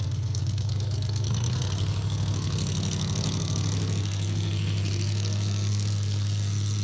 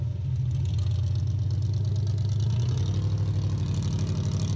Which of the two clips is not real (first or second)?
first